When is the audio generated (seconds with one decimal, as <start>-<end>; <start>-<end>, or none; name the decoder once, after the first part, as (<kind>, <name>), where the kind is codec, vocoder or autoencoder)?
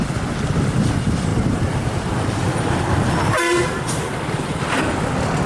1.3-4.6 (vocoder, BigVGAN v2)